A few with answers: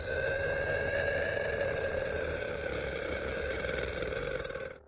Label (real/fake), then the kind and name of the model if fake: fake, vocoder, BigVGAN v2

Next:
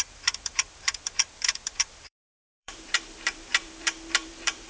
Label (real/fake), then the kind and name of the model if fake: fake, vocoder, BigVGAN v2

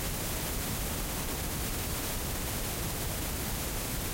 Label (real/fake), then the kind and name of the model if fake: real